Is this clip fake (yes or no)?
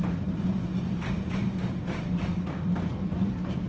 no